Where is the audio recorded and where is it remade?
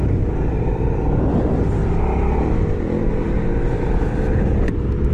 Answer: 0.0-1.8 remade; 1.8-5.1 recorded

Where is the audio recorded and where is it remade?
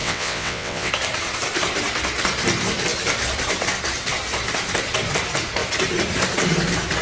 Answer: 0.0-0.9 remade; 0.9-7.0 recorded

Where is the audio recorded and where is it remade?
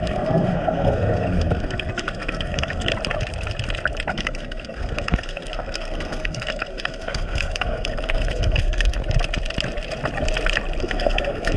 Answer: 0.0-2.9 remade; 2.9-4.1 recorded; 4.1-9.0 remade; 9.0-10.8 recorded; 10.8-11.6 remade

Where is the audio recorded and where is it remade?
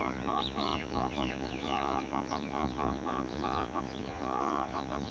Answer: 0.0-5.1 remade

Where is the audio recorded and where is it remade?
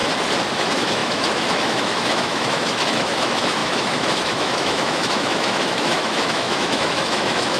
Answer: 0.0-0.5 recorded; 0.5-7.6 remade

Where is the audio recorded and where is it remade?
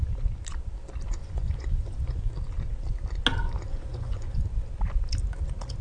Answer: 0.0-1.2 recorded; 1.2-2.3 remade; 2.3-3.7 recorded; 3.7-4.4 remade; 4.4-5.8 recorded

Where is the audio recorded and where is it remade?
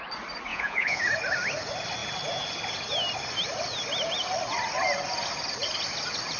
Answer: 0.0-0.5 recorded; 0.5-1.0 remade; 1.0-6.4 recorded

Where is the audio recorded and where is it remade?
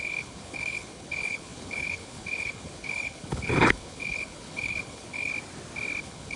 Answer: 0.0-5.3 remade; 5.3-6.0 recorded; 6.0-6.4 remade